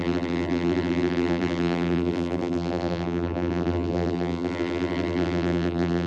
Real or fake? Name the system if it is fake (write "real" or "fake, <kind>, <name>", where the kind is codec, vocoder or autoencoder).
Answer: fake, vocoder, BigVGAN v2